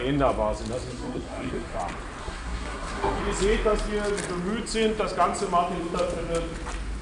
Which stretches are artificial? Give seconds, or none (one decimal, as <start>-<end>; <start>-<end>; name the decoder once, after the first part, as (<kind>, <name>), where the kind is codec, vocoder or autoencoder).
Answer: 0.9-1.8 (codec, SNAC); 2.2-3.2